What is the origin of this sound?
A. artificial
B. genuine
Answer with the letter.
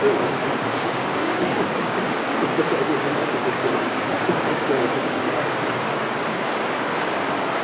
A